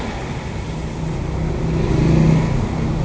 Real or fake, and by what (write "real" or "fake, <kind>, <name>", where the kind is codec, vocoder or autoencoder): real